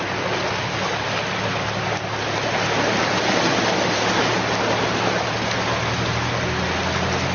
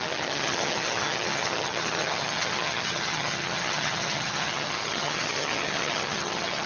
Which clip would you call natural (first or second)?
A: first